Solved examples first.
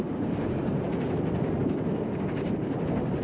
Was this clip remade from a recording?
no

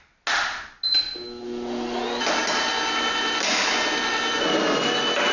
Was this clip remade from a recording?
no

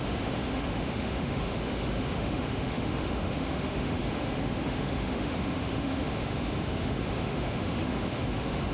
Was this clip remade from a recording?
yes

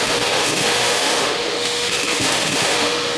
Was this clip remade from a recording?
yes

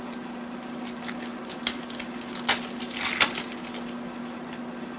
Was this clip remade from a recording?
no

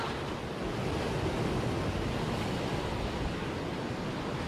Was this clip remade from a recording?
no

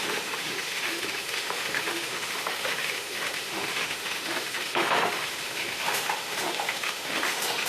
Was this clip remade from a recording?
yes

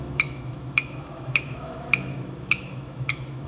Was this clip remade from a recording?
yes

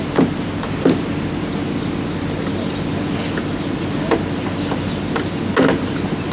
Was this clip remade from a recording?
no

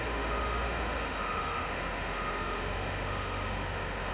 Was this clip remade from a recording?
yes